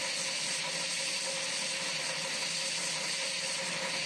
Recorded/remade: recorded